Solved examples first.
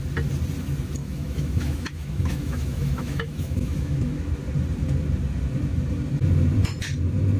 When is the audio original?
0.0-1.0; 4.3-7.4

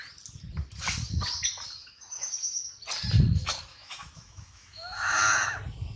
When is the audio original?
0.0-1.8; 2.7-3.7; 5.2-6.0

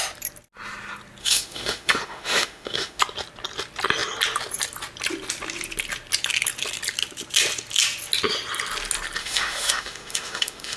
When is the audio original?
0.0-1.2; 3.0-9.2

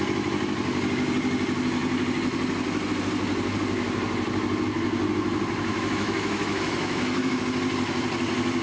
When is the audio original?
0.0-5.7; 7.4-8.6

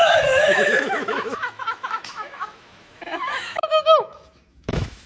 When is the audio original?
none

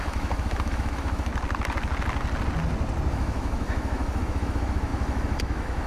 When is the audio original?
1.3-3.1

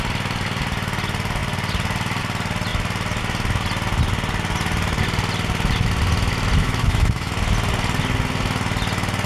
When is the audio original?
0.0-6.6; 7.3-9.3

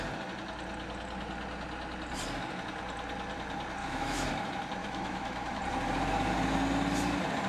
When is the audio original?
0.0-3.8; 4.3-4.8; 5.6-7.5